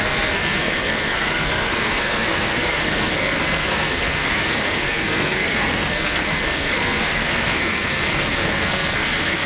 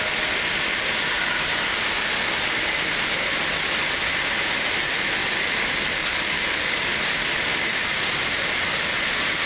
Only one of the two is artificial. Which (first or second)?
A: first